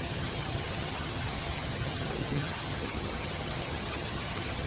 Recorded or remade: remade